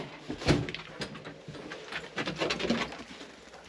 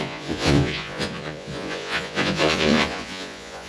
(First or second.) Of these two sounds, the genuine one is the first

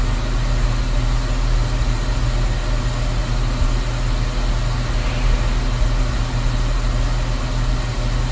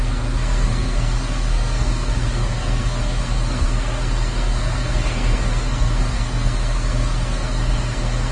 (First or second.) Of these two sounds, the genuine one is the first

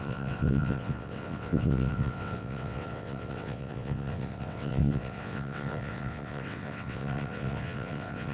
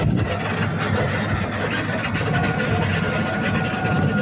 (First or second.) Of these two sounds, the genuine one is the second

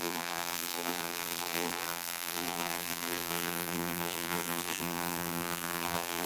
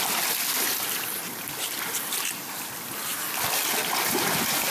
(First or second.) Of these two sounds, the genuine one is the second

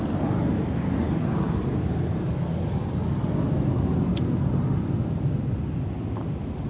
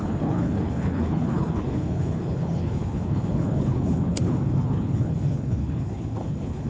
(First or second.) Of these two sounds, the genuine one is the first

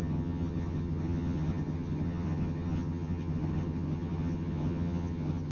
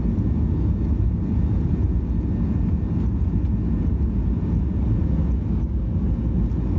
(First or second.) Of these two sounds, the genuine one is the second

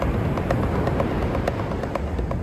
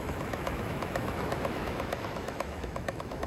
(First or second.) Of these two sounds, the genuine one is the first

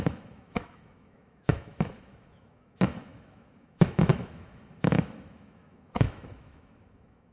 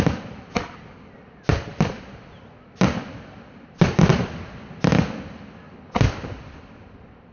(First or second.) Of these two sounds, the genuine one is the second